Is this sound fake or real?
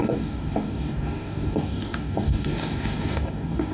fake